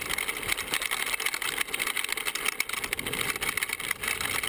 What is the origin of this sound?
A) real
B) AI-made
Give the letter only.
A